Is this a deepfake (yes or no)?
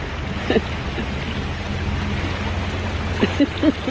no